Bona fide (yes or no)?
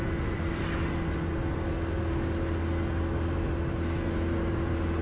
yes